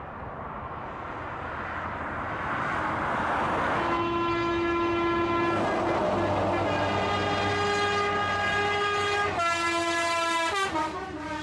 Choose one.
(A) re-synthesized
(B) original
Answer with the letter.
B